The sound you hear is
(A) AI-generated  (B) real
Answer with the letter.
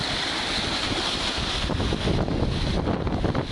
B